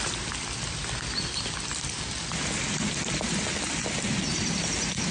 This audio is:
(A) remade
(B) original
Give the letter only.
B